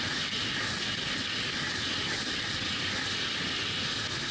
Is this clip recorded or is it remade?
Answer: recorded